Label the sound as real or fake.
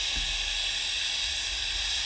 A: real